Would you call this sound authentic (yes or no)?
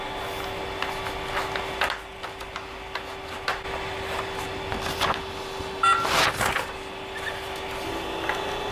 yes